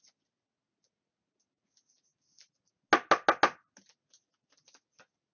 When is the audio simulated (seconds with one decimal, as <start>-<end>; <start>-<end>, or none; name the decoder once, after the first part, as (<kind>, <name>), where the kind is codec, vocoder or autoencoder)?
none